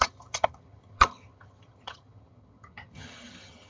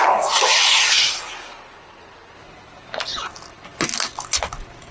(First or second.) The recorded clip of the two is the second